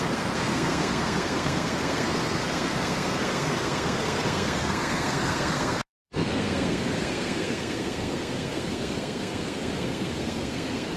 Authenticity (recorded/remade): remade